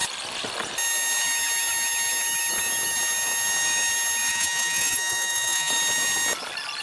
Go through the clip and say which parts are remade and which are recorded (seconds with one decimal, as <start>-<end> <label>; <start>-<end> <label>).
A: 0.0-4.3 recorded; 4.3-5.7 remade; 5.7-6.8 recorded